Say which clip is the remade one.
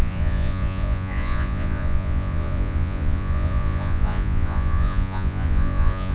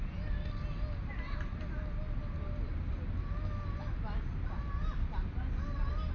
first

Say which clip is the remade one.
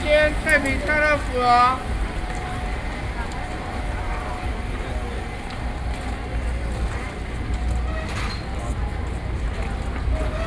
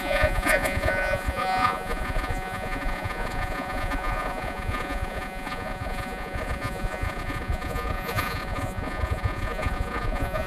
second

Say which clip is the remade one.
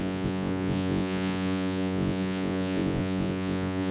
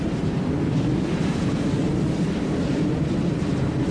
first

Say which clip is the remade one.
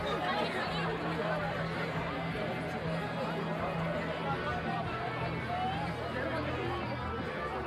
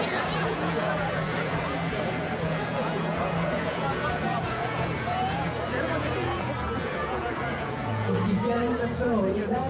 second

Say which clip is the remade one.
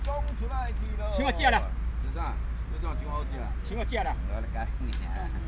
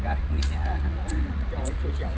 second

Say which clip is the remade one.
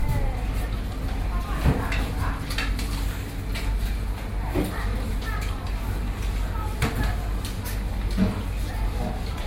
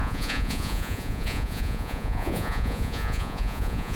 second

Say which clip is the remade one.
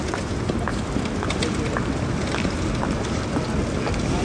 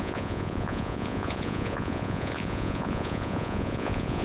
second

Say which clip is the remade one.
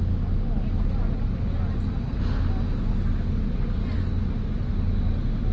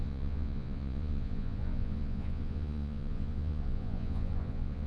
second